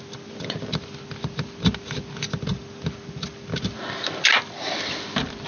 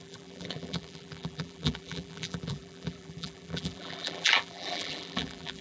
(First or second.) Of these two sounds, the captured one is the first